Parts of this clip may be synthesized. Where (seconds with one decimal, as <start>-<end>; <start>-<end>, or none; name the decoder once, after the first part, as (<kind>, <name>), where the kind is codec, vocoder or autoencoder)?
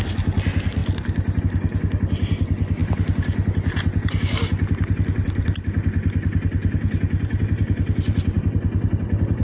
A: none